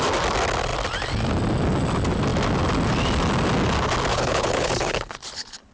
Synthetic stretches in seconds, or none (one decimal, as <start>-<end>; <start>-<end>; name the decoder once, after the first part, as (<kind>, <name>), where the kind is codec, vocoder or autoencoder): 4.1-5.7 (codec, HILCodec)